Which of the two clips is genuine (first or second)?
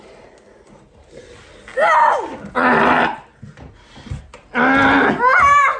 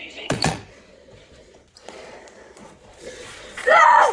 first